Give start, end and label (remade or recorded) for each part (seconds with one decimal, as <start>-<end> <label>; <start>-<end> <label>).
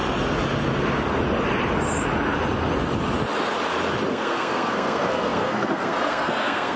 0.0-4.1 recorded; 4.1-6.8 remade